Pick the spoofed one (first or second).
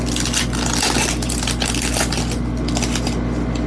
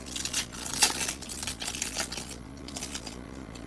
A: second